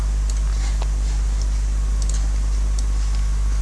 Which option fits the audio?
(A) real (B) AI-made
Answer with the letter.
A